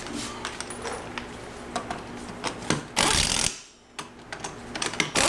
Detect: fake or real real